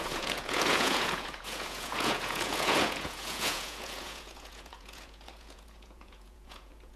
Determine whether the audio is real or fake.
fake